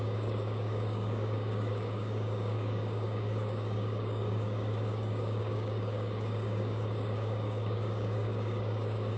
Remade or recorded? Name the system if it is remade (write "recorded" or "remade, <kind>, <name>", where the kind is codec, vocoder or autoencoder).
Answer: remade, codec, DAC